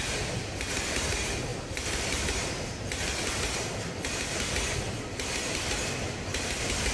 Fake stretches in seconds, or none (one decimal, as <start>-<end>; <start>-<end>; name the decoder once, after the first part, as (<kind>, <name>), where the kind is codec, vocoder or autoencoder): none